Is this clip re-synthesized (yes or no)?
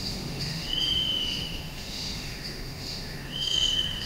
yes